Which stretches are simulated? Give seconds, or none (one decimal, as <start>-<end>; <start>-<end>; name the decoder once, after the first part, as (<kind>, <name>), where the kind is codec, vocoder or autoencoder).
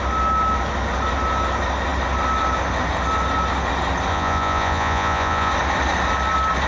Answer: 4.1-5.5 (vocoder, Vocos)